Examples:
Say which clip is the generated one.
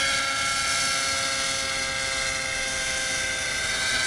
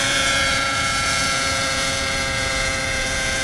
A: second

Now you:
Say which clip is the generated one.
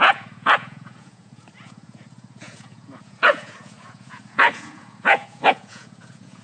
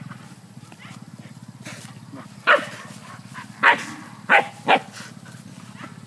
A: first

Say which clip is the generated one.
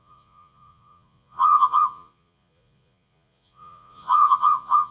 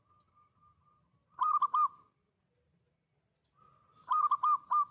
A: first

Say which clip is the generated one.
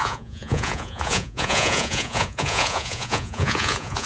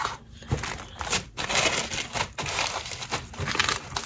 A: first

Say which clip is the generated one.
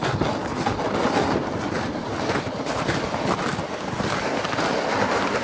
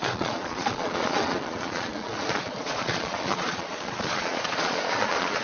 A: second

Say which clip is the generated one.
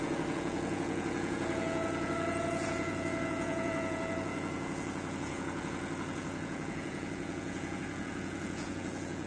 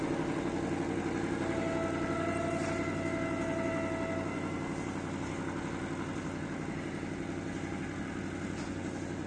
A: first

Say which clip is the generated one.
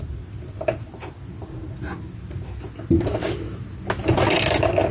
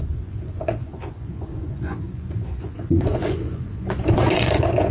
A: second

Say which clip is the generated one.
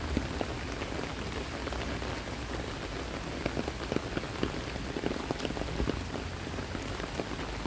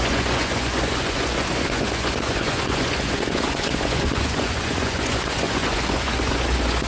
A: second